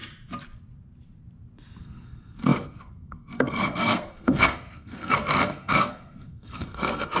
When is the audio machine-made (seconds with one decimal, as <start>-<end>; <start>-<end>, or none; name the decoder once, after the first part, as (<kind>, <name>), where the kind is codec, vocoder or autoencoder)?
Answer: 1.8-7.2 (codec, SNAC)